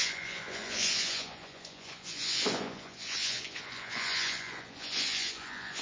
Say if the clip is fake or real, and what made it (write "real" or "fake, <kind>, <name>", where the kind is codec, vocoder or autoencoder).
fake, vocoder, Vocos